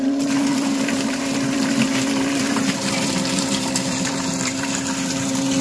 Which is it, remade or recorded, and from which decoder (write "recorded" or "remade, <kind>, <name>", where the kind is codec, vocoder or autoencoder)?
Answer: remade, vocoder, BigVGAN v2